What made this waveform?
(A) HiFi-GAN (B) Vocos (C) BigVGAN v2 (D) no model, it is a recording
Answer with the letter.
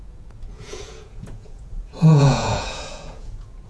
B